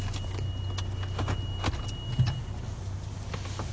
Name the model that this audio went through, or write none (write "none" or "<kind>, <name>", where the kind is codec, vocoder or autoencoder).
none